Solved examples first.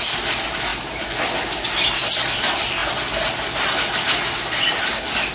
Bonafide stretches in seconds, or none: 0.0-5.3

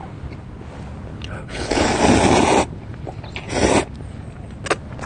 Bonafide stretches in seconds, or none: 0.0-1.1; 1.9-5.1

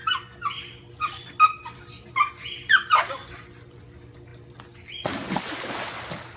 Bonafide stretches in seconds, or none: 0.0-6.4

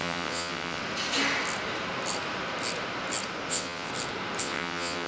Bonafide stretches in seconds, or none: 0.8-3.5; 3.9-4.4